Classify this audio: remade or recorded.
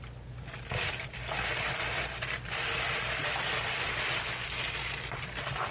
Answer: recorded